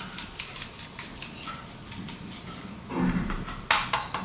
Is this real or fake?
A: real